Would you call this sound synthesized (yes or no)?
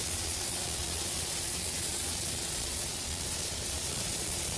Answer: yes